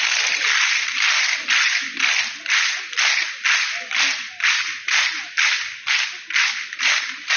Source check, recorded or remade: recorded